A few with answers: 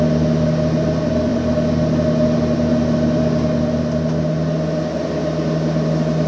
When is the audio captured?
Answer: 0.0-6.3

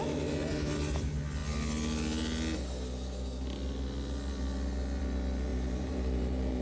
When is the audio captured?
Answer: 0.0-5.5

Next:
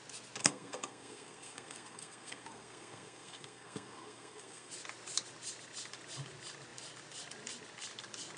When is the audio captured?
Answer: 0.0-0.4; 4.7-8.4